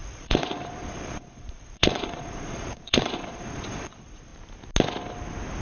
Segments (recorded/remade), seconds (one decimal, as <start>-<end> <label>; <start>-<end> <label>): 0.0-4.3 remade; 4.3-5.6 recorded